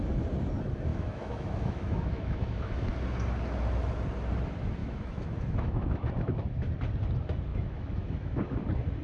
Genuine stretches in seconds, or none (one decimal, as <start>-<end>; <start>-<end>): 0.0-0.9; 2.7-4.8; 6.6-7.5; 8.6-9.0

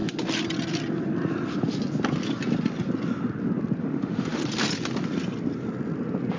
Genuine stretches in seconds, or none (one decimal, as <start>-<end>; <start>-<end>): 0.0-3.8; 4.4-6.4

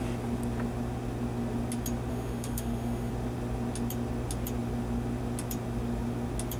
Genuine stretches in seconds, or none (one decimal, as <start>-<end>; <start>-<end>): 0.0-2.1; 3.1-6.6

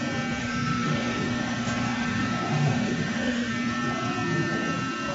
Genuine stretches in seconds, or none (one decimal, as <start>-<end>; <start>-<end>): 0.0-0.4; 3.5-5.1